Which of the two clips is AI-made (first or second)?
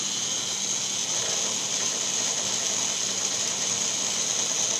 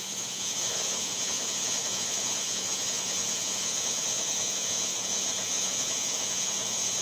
second